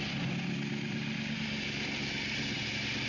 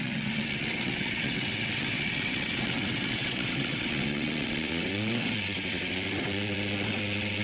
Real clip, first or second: first